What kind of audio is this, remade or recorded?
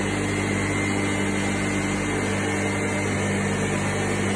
recorded